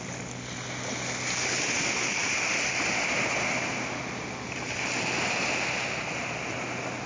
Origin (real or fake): real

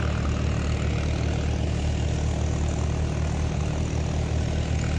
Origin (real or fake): real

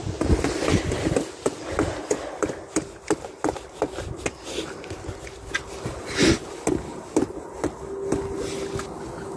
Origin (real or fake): real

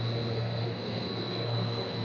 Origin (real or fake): fake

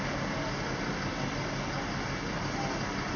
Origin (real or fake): real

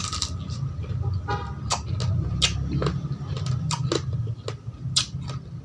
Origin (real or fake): real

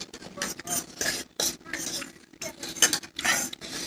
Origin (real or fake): real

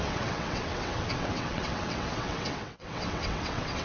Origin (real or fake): fake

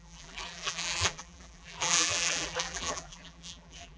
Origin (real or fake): fake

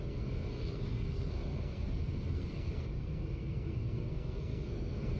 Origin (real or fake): fake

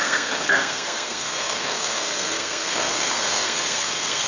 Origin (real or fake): fake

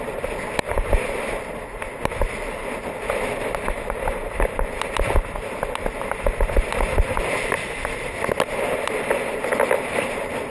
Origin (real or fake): real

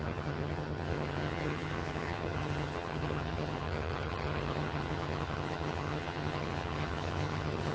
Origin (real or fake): fake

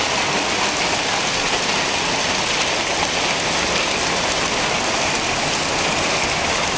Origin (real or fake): real